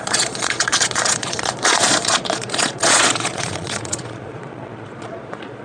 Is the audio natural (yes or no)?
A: no